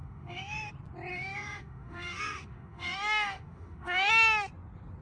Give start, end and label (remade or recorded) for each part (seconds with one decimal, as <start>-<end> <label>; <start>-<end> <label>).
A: 0.0-0.7 remade; 0.7-1.1 recorded; 1.1-4.1 remade; 4.1-5.0 recorded